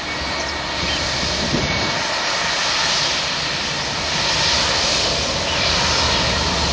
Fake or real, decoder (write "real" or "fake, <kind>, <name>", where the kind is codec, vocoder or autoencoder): real